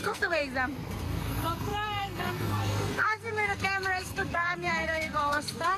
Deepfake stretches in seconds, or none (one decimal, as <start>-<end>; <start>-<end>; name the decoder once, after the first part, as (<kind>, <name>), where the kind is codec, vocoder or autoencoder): 0.0-0.4 (codec, SNAC); 1.0-5.8